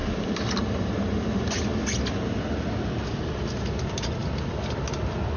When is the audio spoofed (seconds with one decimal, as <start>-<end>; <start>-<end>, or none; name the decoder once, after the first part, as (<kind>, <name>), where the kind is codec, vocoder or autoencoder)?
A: none